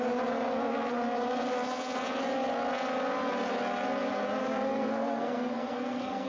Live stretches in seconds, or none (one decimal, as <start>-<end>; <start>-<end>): 0.0-4.4

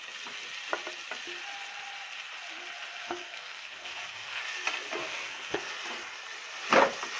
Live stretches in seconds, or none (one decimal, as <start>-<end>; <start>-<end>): 0.0-3.0; 4.4-5.0; 5.7-7.2